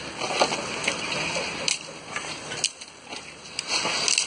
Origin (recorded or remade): recorded